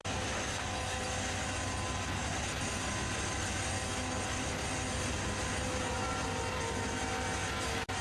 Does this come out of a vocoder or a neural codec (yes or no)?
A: no